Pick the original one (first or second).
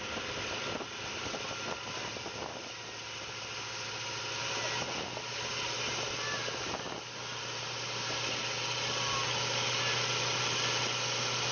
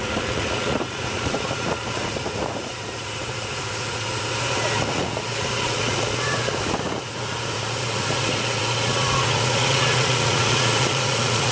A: first